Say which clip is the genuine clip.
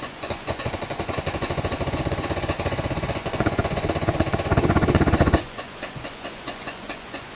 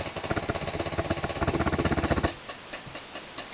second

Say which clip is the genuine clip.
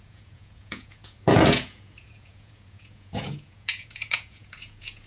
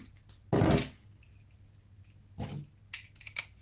second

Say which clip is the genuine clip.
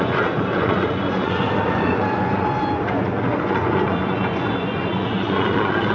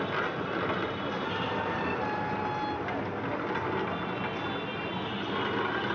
second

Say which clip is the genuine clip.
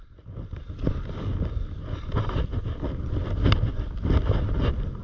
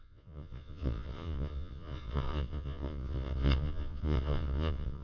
first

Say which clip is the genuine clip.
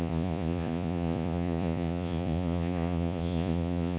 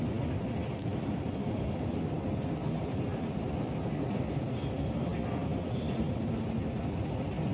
second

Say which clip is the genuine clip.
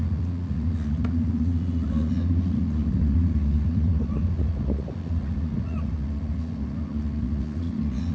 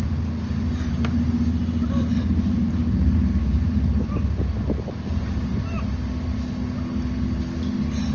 second